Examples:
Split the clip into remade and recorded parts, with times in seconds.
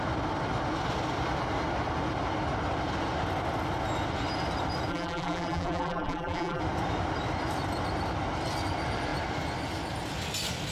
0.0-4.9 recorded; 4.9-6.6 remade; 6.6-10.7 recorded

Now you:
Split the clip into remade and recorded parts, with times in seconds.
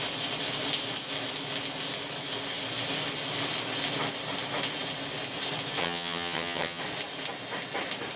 0.0-5.8 recorded; 5.8-6.8 remade; 6.8-8.2 recorded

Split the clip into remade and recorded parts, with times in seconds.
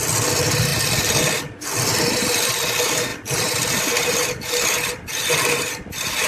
0.0-3.1 recorded; 3.1-4.9 remade; 4.9-6.3 recorded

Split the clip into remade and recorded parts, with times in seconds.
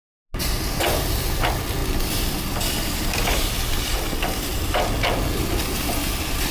0.0-6.5 recorded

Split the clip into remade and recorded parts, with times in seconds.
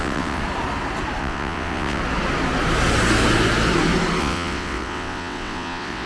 0.0-0.4 remade; 0.4-1.2 recorded; 1.2-2.0 remade; 2.0-4.2 recorded; 4.2-6.1 remade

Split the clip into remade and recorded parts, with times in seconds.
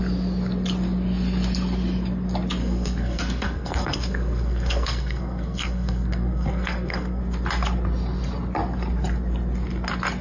0.0-2.6 recorded; 2.6-7.2 remade; 7.2-10.2 recorded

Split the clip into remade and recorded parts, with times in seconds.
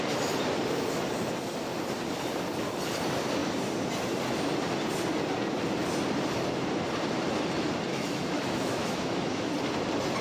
0.0-7.9 recorded; 7.9-9.5 remade; 9.5-10.2 recorded